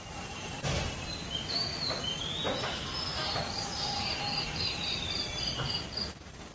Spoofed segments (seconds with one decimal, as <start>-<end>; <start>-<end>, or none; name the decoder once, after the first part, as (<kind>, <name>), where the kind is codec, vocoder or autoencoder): 0.0-1.7 (vocoder, BigVGAN v2); 3.8-5.3; 6.0-6.5